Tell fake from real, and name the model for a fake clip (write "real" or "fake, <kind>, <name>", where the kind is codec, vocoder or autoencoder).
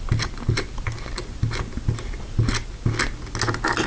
real